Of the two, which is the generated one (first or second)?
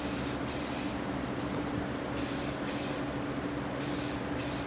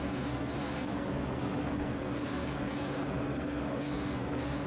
second